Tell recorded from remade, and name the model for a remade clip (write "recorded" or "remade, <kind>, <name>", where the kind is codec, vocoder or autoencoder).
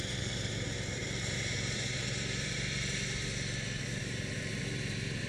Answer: remade, vocoder, BigVGAN v2